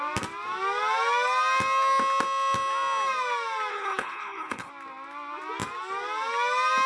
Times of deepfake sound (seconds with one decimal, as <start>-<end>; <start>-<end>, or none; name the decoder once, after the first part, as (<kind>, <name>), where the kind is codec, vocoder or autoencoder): 3.7-4.7 (codec, HILCodec)